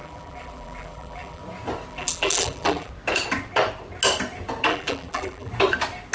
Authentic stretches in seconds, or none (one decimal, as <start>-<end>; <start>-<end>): 1.4-1.9; 2.9-4.7; 5.5-6.1